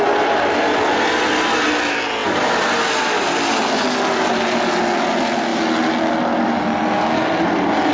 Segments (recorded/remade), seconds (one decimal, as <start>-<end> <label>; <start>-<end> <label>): 0.0-7.9 recorded